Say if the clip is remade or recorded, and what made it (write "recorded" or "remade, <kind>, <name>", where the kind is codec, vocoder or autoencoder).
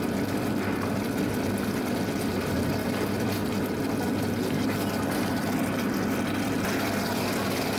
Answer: recorded